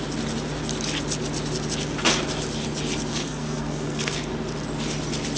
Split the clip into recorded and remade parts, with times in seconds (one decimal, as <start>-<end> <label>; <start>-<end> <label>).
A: 0.0-3.1 recorded; 3.1-4.3 remade; 4.3-5.4 recorded